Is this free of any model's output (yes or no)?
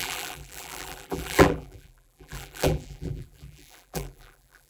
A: no